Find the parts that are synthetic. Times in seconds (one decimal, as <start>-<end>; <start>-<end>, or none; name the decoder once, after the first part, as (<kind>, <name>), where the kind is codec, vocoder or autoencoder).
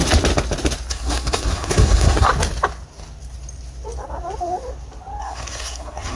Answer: 0.9-2.3 (codec, SNAC); 5.2-6.2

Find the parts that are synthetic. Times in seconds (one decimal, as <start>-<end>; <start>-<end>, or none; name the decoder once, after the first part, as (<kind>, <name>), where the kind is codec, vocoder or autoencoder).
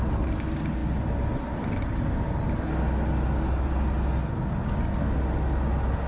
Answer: none